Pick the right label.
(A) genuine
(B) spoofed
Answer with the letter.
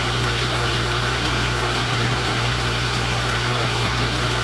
B